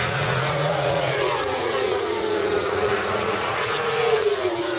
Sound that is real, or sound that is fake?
fake